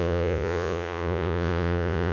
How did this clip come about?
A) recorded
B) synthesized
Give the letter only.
B